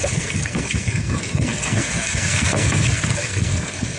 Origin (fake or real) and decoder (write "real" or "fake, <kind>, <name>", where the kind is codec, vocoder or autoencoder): fake, codec, SNAC